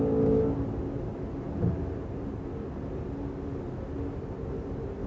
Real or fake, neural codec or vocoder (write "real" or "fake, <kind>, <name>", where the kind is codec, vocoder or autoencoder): real